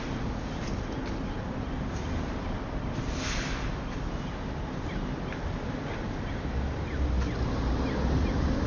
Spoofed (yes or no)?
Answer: no